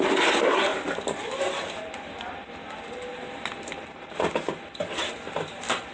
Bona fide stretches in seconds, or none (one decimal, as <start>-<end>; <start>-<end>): 0.0-0.7; 3.7-5.9